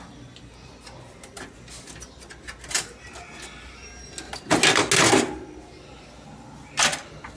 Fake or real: real